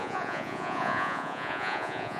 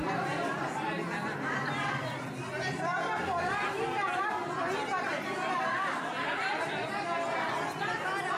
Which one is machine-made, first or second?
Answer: first